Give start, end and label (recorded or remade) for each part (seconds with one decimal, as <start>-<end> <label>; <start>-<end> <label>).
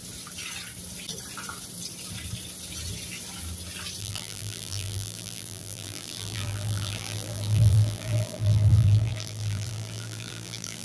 0.0-4.0 recorded; 4.0-10.8 remade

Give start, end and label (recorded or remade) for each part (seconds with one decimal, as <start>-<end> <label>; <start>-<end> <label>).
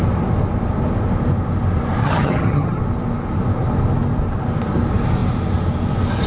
0.0-2.0 recorded; 2.0-2.8 remade; 2.8-6.3 recorded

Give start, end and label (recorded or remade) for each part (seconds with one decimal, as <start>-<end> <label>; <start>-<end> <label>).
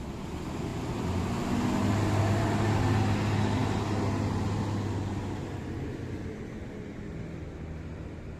0.0-8.4 recorded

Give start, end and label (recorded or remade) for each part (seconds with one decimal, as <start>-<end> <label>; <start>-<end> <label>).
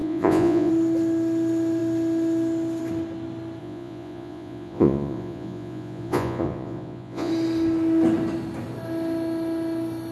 0.0-0.7 remade; 0.7-3.6 recorded; 3.6-7.3 remade; 7.3-10.1 recorded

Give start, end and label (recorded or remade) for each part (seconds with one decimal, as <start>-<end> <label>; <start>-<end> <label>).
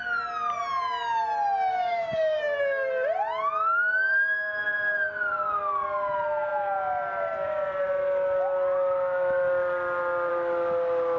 0.0-1.7 recorded; 1.7-2.4 remade; 2.4-11.2 recorded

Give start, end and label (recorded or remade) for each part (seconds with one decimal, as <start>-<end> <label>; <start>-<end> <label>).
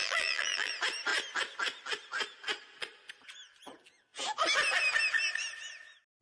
0.0-0.7 remade; 0.7-6.2 recorded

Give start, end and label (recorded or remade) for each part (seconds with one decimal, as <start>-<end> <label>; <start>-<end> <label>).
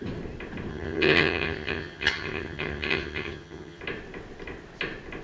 0.0-0.7 recorded; 0.7-3.8 remade; 3.8-5.2 recorded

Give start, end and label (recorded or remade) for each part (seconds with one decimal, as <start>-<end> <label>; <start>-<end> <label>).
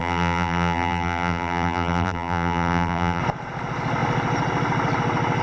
0.0-3.2 remade; 3.2-5.4 recorded